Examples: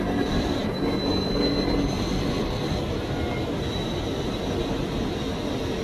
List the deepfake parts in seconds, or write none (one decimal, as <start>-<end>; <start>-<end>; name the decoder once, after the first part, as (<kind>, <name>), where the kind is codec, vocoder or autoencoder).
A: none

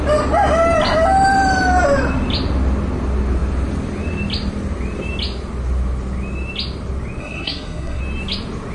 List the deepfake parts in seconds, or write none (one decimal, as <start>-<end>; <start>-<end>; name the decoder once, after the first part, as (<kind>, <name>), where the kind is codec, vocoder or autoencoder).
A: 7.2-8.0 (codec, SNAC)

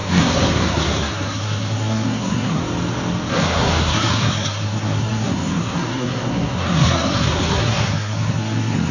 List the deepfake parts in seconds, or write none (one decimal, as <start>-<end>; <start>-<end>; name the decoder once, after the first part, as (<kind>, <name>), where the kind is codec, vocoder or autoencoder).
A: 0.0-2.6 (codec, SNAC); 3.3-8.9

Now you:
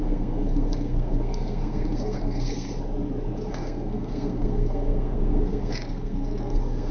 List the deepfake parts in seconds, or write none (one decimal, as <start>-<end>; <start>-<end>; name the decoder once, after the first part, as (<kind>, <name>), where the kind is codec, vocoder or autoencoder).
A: 0.0-2.7 (codec, SNAC); 3.5-6.9